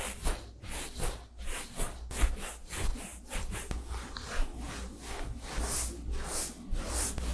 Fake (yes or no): no